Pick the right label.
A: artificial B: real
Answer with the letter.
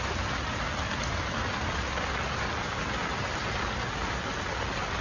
B